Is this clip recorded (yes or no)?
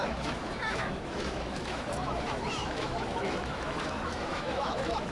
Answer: no